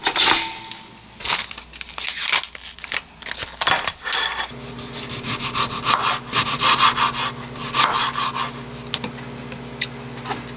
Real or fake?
real